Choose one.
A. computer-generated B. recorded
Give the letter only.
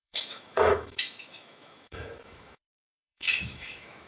A